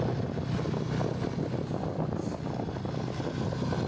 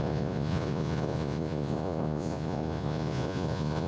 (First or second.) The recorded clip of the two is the first